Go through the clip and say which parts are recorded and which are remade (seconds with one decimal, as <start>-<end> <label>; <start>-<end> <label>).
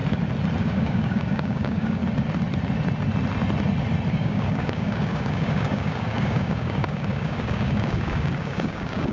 0.0-0.6 recorded; 0.6-2.0 remade; 2.0-4.1 recorded; 4.1-9.1 remade